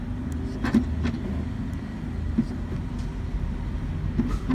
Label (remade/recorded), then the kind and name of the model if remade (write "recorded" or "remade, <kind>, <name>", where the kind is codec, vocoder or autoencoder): recorded